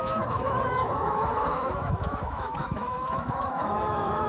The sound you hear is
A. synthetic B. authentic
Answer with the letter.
A